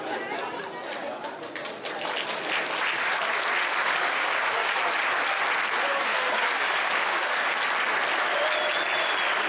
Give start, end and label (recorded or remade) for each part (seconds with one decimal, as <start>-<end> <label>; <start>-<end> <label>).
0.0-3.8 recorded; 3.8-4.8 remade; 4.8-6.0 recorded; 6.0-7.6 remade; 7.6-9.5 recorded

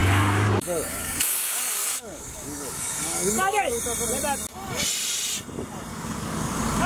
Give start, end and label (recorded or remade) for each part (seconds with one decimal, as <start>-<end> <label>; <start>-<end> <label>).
0.0-3.8 remade; 3.8-5.9 recorded; 5.9-6.9 remade

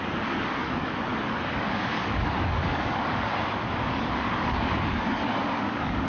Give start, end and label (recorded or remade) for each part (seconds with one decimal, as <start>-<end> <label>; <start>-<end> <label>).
0.0-3.3 remade; 3.3-3.9 recorded; 3.9-6.1 remade

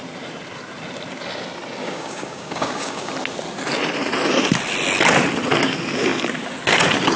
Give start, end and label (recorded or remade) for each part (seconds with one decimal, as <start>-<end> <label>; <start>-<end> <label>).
0.0-1.8 recorded; 1.8-3.1 remade; 3.1-7.2 recorded

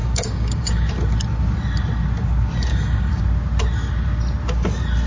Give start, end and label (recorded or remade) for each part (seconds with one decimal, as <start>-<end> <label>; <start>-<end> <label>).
0.0-0.9 remade; 0.9-2.7 recorded; 2.7-3.2 remade; 3.2-5.1 recorded